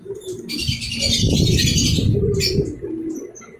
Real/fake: real